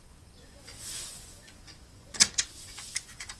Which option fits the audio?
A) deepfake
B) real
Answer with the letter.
A